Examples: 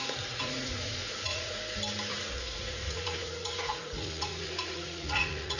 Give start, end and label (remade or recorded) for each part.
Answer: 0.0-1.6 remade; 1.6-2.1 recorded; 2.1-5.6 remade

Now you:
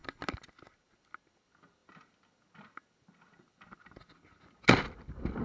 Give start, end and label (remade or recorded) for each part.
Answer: 0.0-5.4 recorded

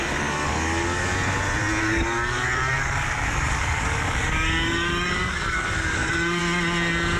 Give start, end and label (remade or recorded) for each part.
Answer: 0.0-1.1 remade; 1.1-1.8 recorded; 1.8-6.4 remade; 6.4-7.2 recorded

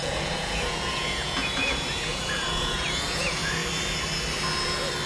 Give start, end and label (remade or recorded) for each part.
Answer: 0.0-3.6 remade; 3.6-5.1 recorded

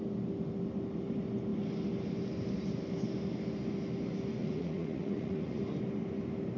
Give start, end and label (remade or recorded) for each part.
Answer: 0.0-4.4 recorded; 4.4-5.6 remade; 5.6-6.6 recorded

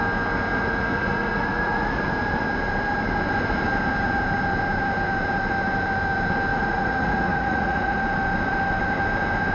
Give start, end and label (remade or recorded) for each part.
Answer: 0.0-0.5 recorded; 0.5-2.0 remade; 2.0-6.5 recorded; 6.5-8.0 remade; 8.0-9.5 recorded

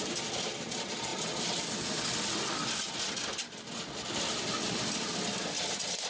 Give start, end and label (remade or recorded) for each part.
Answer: 0.0-1.1 recorded; 1.1-4.8 remade; 4.8-6.1 recorded